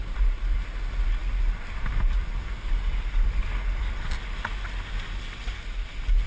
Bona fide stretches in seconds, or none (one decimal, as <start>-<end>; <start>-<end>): 0.6-1.2; 4.2-6.3

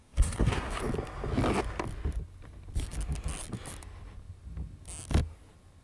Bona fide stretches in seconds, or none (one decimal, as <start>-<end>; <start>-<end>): 0.8-5.8

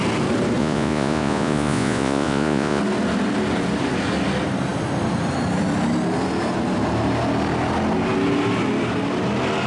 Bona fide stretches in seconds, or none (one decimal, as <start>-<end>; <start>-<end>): 0.0-0.6; 2.8-9.7

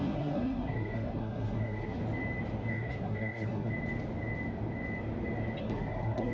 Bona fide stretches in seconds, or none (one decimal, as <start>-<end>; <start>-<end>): 2.0-2.7; 3.7-5.6

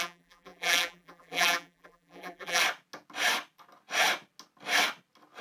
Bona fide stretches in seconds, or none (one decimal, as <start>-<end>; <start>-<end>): 2.6-5.4

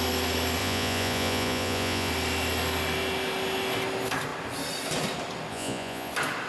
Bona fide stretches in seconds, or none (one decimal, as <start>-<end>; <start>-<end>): 0.0-0.6; 2.1-5.5; 6.1-6.5